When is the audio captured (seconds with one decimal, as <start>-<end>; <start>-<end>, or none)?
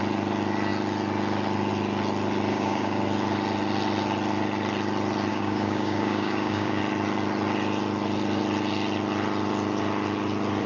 0.0-2.5; 3.0-5.3; 6.8-10.7